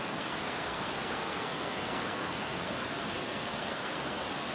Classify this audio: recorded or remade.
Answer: remade